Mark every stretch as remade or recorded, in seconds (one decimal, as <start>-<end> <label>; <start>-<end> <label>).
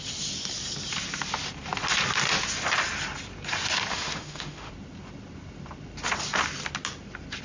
0.0-3.9 recorded; 3.9-4.7 remade; 4.7-7.4 recorded